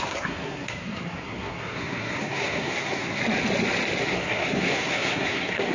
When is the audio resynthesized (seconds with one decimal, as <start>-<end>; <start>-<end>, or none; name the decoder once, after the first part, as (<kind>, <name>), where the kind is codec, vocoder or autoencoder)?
0.0-3.2 (codec, SNAC); 4.0-5.7